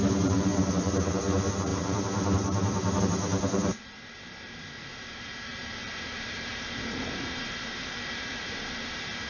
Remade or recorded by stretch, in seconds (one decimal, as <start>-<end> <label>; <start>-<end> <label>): 0.0-9.3 remade